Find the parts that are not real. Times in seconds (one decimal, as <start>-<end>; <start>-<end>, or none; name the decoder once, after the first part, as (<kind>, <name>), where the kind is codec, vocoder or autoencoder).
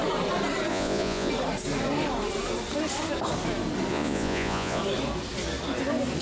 0.7-1.3 (vocoder, Vocos); 3.9-4.8